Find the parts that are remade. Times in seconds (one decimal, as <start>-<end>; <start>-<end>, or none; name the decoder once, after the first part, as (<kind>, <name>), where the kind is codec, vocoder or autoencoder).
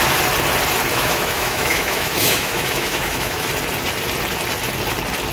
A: 0.9-3.5 (autoencoder, DAC-VAE)